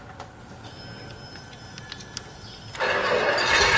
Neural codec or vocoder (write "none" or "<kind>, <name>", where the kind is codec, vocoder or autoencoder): none